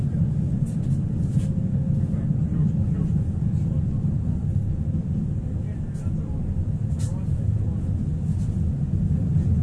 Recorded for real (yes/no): yes